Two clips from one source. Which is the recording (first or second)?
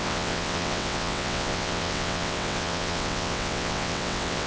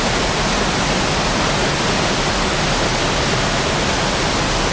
second